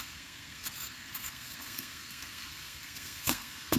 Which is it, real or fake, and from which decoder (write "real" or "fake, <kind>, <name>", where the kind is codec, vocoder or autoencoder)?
fake, codec, SNAC